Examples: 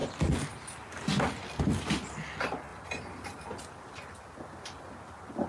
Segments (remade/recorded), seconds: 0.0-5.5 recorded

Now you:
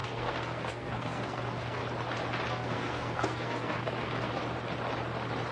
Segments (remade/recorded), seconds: 0.0-1.8 remade; 1.8-2.5 recorded; 2.5-4.4 remade; 4.4-5.5 recorded

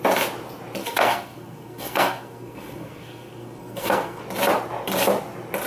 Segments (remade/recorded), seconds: 0.0-0.8 recorded; 0.8-4.2 remade; 4.2-5.7 recorded

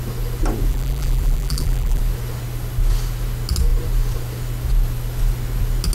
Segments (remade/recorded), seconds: 0.0-0.7 recorded; 0.7-2.0 remade; 2.0-5.9 recorded

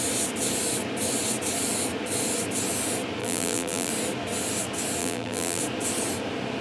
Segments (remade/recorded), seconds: 0.0-3.2 recorded; 3.2-3.9 remade; 3.9-5.0 recorded; 5.0-5.6 remade; 5.6-6.6 recorded

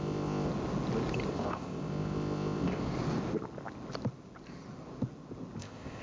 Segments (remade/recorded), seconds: 0.0-0.5 remade; 0.5-1.3 recorded; 1.3-2.8 remade; 2.8-5.6 recorded; 5.6-6.0 remade

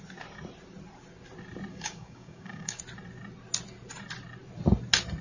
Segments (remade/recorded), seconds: 0.0-1.7 recorded; 1.7-2.8 remade; 2.8-5.2 recorded